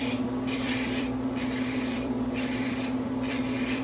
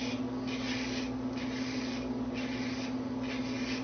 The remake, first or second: first